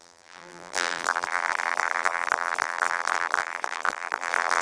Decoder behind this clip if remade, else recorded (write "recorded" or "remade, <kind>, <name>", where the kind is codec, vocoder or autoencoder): remade, vocoder, BigVGAN v2